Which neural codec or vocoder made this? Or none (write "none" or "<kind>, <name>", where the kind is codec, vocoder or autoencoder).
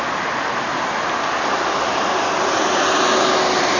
none